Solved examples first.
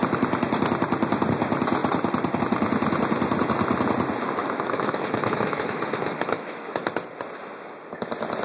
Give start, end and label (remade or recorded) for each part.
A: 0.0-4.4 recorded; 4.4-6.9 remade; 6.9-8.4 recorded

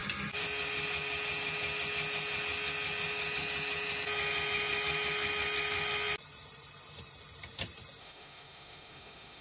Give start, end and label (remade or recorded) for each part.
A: 0.0-8.0 recorded; 8.0-9.4 remade

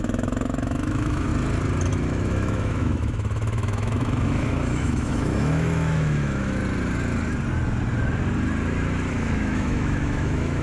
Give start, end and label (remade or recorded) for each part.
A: 0.0-1.3 remade; 1.3-1.9 recorded; 1.9-6.6 remade; 6.6-9.1 recorded; 9.1-10.6 remade